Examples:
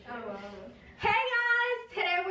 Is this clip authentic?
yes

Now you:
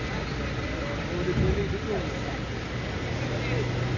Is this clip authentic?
yes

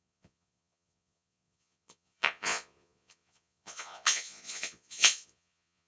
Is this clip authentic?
no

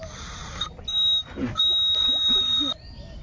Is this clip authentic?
yes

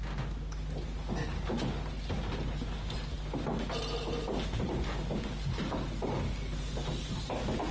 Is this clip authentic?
yes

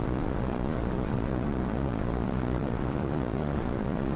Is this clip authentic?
no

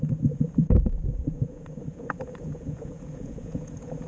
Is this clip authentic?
no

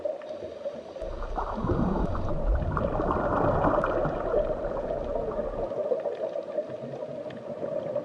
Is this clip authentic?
yes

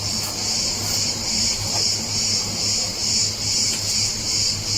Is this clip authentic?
yes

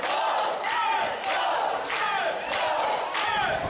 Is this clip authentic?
yes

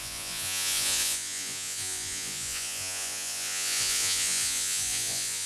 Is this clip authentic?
no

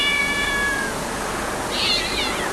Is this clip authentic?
no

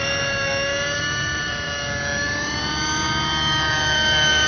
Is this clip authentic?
yes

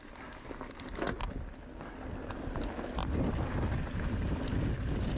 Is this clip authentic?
yes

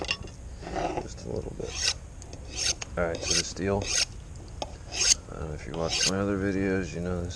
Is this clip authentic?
yes